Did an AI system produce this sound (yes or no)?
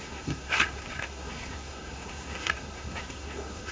yes